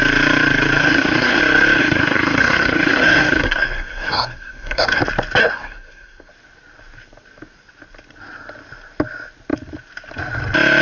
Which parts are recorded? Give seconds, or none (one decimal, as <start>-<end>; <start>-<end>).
0.0-0.8; 1.4-1.8; 5.0-5.4; 6.3-10.8